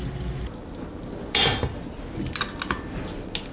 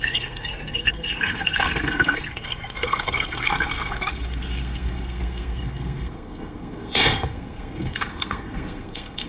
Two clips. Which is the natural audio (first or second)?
first